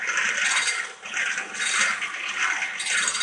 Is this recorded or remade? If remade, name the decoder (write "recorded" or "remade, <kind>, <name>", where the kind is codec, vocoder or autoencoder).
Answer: recorded